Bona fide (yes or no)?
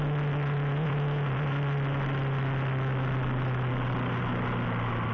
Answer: yes